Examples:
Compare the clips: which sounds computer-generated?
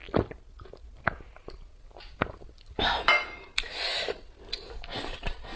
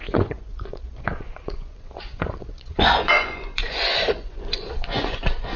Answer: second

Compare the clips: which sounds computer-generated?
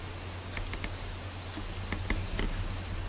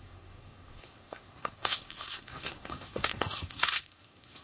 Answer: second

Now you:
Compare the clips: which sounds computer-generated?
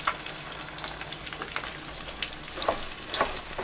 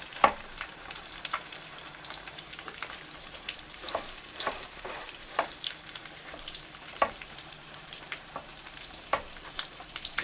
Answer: second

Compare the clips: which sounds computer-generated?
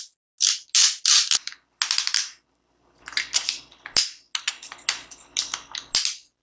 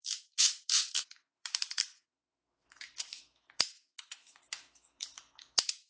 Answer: second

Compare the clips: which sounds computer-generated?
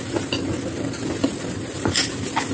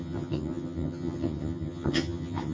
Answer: second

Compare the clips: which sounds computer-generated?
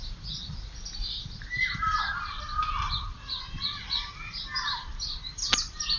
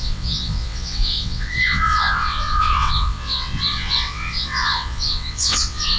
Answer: second